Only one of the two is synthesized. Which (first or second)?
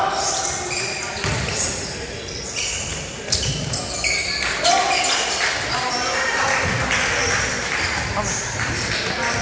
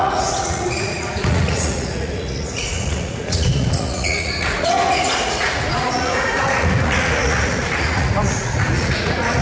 second